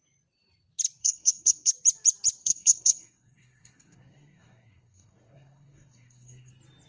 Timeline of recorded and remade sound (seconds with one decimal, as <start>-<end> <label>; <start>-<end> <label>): 0.0-1.0 recorded; 1.0-1.7 remade; 1.7-2.4 recorded; 2.4-6.5 remade; 6.5-6.9 recorded